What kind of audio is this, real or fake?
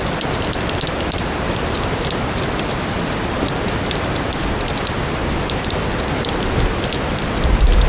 fake